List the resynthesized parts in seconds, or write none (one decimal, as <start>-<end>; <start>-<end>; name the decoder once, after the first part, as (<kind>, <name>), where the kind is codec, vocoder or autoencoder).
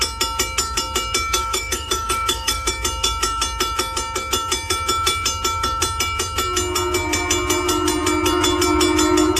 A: 1.4-2.7 (codec, DAC)